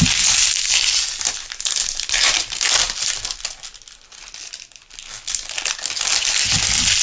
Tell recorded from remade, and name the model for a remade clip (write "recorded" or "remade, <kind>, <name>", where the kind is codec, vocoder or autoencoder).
recorded